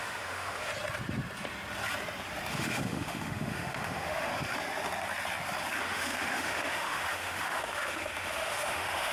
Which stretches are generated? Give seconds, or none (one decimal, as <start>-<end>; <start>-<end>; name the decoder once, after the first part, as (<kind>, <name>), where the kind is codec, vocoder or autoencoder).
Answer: 0.0-0.7 (autoencoder, DAC-VAE); 2.5-4.3; 5.8-9.1